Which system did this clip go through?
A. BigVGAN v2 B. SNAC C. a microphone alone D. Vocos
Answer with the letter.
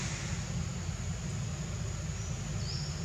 C